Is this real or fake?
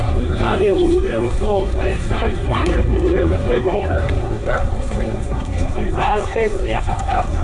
fake